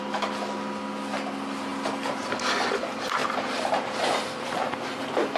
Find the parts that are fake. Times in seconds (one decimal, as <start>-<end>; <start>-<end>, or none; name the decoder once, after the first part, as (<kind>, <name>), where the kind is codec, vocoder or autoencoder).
3.2-5.0 (vocoder, BigVGAN v2)